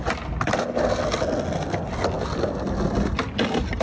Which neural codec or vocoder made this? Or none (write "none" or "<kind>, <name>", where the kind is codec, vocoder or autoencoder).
none